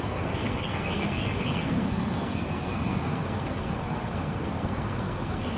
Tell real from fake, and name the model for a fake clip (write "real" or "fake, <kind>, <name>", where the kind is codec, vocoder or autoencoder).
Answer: fake, codec, SNAC